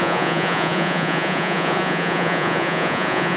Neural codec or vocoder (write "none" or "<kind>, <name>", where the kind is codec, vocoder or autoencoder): vocoder, Vocos